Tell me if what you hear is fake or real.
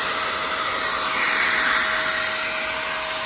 real